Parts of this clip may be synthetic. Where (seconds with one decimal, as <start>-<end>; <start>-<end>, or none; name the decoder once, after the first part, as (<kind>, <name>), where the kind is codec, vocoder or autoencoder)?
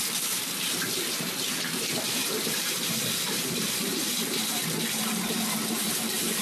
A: 2.2-2.9 (vocoder, BigVGAN v2); 3.4-4.1